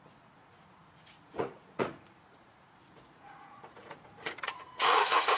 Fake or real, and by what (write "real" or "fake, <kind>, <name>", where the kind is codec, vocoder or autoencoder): fake, vocoder, Vocos